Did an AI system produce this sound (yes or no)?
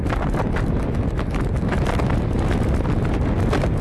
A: no